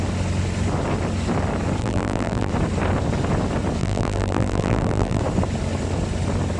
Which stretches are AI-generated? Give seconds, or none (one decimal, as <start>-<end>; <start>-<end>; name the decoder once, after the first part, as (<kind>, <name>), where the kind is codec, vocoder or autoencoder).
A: 1.8-2.5 (vocoder, BigVGAN v2); 3.8-5.2